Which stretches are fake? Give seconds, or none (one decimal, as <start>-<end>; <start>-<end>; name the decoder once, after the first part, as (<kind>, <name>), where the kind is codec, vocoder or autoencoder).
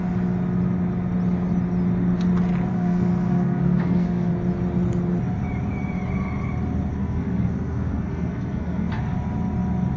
2.7-4.3 (codec, SNAC); 7.0-8.9